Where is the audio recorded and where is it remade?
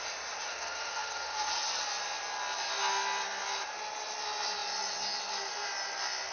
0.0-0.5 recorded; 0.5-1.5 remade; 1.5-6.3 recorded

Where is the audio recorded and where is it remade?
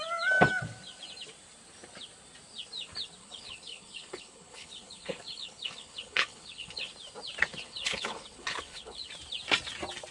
0.0-3.2 recorded; 3.2-6.9 remade; 6.9-7.5 recorded; 7.5-9.1 remade; 9.1-10.1 recorded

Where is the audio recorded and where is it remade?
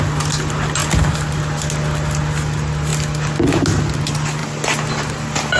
0.0-5.6 recorded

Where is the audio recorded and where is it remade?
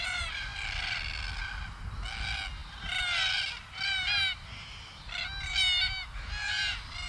0.0-7.1 recorded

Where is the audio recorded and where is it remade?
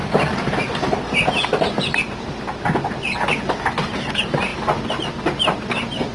0.0-6.1 recorded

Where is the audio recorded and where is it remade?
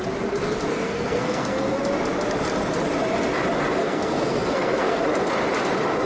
0.0-0.7 recorded; 0.7-1.8 remade; 1.8-3.8 recorded; 3.8-5.0 remade; 5.0-6.1 recorded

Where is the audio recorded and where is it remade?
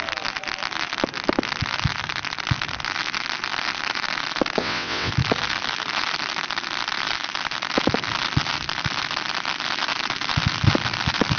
0.0-4.6 recorded; 4.6-5.1 remade; 5.1-11.4 recorded